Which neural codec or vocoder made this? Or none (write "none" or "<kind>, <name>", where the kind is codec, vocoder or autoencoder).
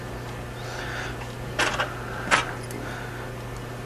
none